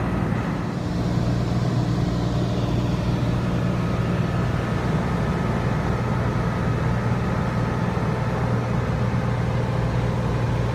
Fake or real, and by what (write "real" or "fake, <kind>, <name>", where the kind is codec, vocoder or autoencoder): real